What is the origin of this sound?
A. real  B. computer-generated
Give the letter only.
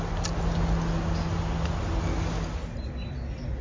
A